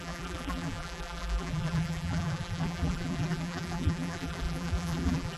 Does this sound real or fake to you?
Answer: fake